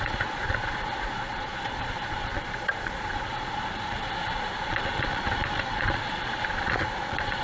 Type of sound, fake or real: fake